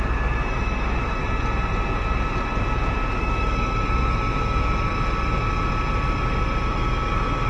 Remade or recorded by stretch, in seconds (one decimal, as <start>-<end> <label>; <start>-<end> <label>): 0.0-1.2 remade; 1.2-3.2 recorded; 3.2-4.9 remade; 4.9-6.6 recorded; 6.6-7.5 remade